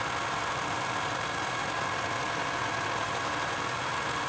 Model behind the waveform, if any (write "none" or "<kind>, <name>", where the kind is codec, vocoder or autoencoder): none